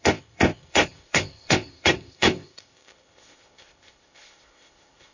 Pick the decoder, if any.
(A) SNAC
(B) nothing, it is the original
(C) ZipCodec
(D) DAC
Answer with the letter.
C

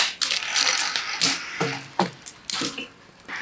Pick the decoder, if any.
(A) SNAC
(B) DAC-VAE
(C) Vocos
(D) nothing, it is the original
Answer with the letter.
D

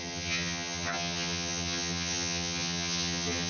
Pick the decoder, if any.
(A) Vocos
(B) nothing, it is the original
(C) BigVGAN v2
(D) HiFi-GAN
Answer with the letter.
D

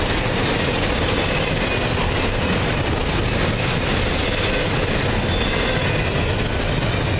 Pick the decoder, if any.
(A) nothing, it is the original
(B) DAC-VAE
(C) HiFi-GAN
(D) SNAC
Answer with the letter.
A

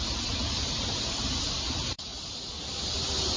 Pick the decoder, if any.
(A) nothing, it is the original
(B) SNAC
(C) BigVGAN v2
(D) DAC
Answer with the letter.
A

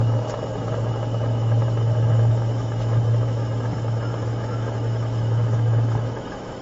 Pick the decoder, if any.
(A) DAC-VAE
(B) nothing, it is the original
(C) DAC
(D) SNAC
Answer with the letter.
A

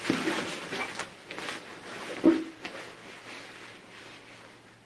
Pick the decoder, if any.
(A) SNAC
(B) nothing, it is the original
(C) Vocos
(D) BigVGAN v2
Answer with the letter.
B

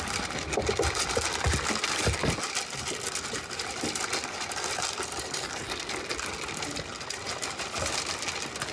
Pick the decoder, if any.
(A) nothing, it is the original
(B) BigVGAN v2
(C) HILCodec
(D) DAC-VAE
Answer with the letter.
A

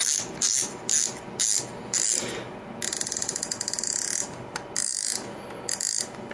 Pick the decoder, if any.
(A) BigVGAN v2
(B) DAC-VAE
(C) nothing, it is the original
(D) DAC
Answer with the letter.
C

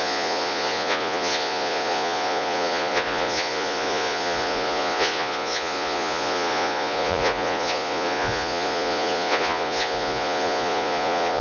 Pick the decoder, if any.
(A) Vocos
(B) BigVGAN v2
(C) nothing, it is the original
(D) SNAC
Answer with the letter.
A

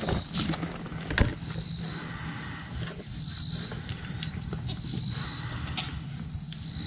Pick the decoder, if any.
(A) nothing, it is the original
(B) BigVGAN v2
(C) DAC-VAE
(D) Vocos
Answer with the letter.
A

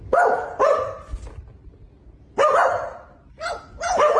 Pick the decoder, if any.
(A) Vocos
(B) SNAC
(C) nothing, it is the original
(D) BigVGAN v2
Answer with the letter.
C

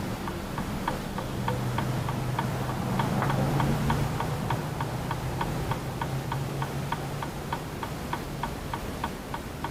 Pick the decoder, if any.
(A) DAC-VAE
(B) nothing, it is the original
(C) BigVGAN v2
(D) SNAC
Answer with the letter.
C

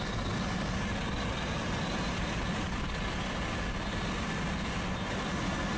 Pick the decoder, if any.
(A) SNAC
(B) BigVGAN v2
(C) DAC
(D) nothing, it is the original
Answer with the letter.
D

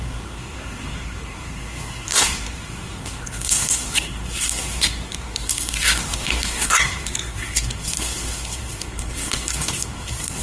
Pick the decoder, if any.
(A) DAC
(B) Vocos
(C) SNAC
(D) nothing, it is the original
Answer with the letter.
C